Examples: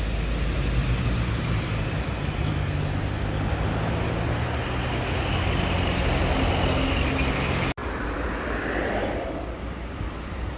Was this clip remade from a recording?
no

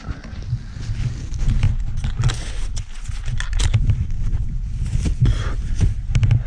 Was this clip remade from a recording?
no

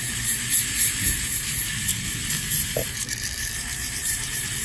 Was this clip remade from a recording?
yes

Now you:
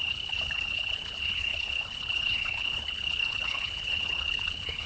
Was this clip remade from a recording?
yes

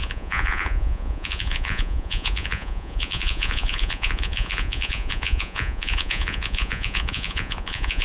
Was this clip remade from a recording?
yes